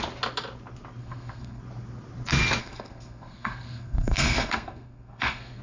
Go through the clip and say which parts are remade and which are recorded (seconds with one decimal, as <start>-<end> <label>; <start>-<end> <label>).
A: 0.0-1.0 recorded; 1.0-1.6 remade; 1.6-2.6 recorded; 2.6-5.6 remade